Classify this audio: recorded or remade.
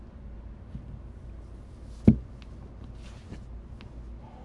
recorded